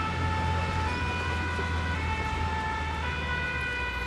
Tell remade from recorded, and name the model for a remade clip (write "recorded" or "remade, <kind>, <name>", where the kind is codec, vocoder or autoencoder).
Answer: recorded